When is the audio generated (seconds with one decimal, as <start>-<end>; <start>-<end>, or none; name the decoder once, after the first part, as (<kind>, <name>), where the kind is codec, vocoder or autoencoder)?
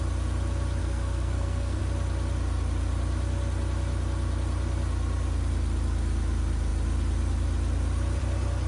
0.8-1.8 (codec, SNAC)